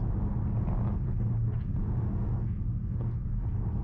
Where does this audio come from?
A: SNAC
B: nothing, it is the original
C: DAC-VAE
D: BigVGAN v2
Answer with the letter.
B